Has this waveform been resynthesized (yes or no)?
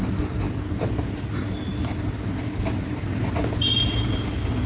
no